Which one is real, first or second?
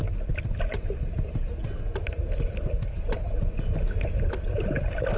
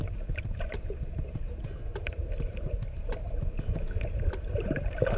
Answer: first